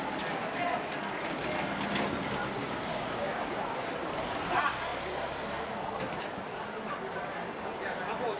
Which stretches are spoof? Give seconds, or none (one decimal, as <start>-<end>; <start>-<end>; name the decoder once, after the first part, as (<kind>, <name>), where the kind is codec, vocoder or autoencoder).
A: 2.6-3.5 (codec, DAC)